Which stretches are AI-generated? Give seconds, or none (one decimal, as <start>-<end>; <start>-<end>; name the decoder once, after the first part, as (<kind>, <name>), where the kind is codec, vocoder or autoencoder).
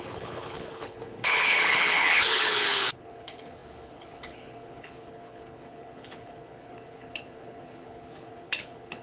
0.0-9.0 (codec, HILCodec)